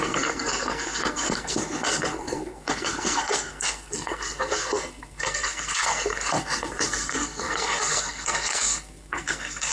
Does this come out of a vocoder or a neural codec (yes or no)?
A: yes